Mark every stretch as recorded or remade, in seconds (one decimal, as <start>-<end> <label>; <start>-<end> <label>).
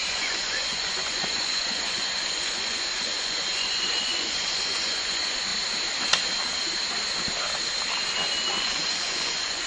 0.0-5.5 remade; 5.5-8.6 recorded; 8.6-9.7 remade